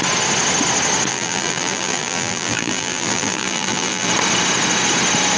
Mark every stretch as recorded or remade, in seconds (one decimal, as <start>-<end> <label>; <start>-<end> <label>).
0.0-1.1 recorded; 1.1-4.1 remade; 4.1-5.4 recorded

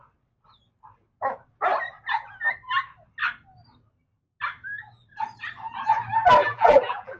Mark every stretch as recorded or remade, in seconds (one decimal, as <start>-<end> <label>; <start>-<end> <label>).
0.0-6.4 recorded; 6.4-7.2 remade